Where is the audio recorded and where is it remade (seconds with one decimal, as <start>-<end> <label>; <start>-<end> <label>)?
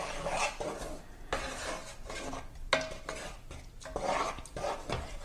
0.0-5.2 recorded